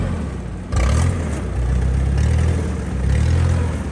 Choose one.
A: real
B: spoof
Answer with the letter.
A